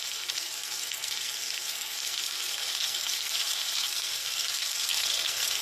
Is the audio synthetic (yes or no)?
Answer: yes